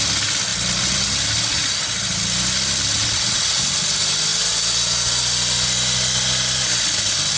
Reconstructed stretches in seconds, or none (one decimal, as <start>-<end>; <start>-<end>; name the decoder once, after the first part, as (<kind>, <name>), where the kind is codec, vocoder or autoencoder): none